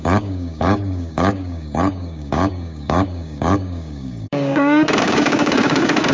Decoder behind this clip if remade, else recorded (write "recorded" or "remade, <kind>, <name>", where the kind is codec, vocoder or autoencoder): remade, codec, DAC